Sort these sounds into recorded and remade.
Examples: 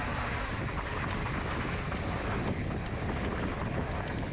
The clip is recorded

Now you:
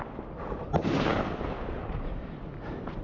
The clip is recorded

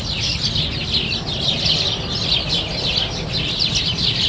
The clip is recorded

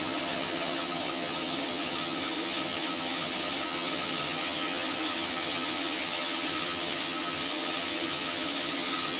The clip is remade